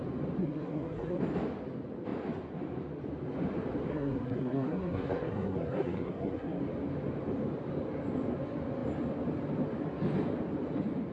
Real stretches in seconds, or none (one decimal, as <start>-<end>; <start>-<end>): 0.0-0.4; 1.2-3.9; 6.6-11.1